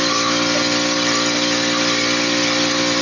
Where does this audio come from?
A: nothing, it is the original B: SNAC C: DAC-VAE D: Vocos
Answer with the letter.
A